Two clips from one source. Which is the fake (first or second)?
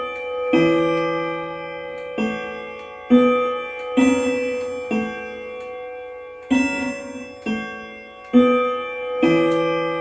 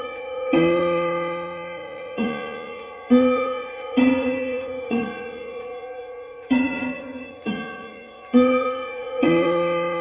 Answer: second